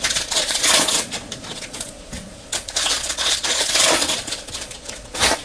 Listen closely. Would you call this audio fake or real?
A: fake